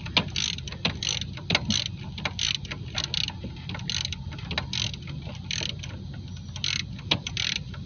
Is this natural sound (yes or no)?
yes